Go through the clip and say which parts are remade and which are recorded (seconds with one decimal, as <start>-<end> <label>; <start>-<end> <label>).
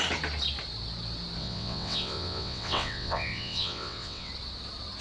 0.0-1.4 recorded; 1.4-4.3 remade; 4.3-5.0 recorded